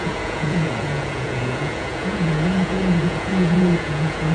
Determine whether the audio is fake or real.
fake